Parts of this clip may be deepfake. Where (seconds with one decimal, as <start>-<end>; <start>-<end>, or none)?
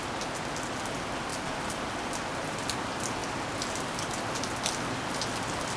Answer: 1.3-1.8